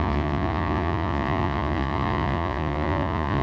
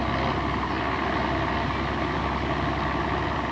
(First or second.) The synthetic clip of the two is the first